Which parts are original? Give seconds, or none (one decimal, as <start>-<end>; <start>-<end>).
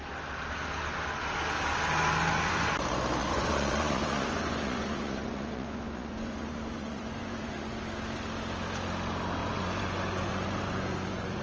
0.0-3.2; 7.8-9.4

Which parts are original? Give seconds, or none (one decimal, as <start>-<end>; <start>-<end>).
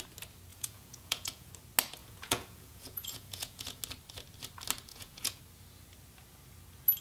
0.0-0.5; 1.5-2.0; 3.8-4.9; 5.4-7.0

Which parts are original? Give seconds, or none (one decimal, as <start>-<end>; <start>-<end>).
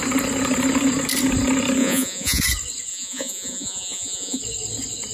0.0-1.8; 2.4-2.9; 4.4-5.1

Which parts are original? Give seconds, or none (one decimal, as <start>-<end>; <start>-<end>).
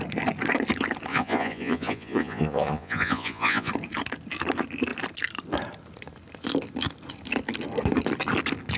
0.0-1.1; 3.7-8.8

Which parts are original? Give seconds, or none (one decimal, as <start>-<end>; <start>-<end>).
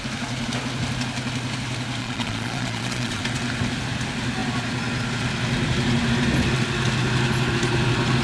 0.0-2.0; 3.2-8.2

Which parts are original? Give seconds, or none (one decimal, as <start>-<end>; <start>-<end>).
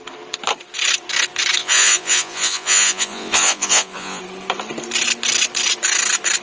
0.0-1.6; 4.2-6.4